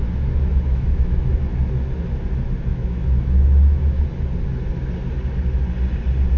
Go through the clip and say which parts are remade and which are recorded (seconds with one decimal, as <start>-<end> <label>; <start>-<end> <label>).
0.0-0.5 recorded; 0.5-1.3 remade; 1.3-2.7 recorded; 2.7-4.0 remade; 4.0-6.4 recorded